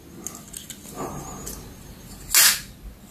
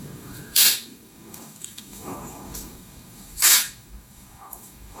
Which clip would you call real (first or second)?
first